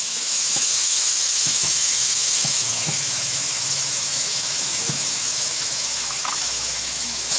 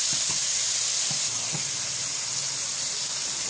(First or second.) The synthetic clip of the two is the first